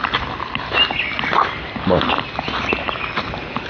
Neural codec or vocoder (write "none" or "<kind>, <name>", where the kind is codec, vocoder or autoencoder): none